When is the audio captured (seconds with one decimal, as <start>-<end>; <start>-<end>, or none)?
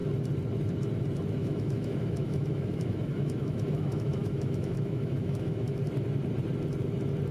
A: 0.0-1.4; 5.8-7.3